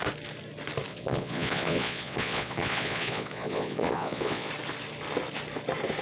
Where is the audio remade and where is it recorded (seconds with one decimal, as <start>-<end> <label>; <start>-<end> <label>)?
0.0-0.9 recorded; 0.9-4.5 remade; 4.5-6.0 recorded